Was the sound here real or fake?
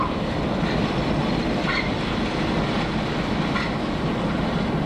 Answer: real